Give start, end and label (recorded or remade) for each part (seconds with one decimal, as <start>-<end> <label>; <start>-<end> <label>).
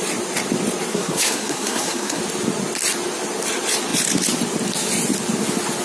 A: 0.0-0.9 recorded; 0.9-2.2 remade; 2.2-5.8 recorded